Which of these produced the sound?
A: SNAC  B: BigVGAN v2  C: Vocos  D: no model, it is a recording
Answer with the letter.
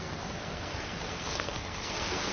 A